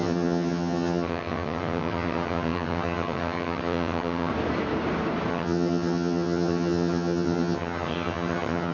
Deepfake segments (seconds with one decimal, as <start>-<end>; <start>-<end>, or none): 0.0-4.3; 5.3-8.7